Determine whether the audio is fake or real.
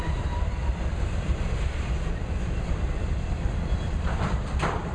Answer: fake